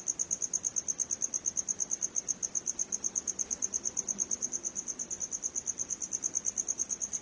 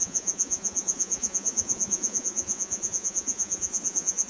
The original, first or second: first